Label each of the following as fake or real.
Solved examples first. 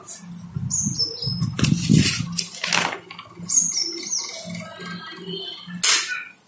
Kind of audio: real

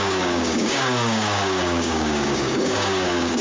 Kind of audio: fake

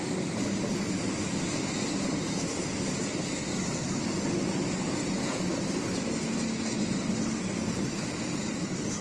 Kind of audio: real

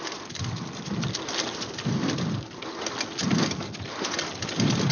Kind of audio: real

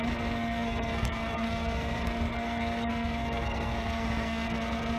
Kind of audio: fake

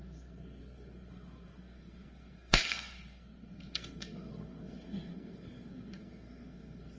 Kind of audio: fake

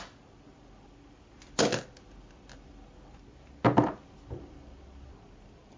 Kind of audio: real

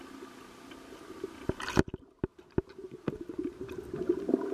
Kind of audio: real